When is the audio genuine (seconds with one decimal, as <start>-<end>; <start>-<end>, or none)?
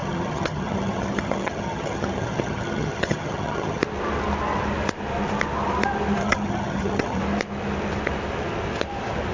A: 3.8-6.2; 7.2-9.3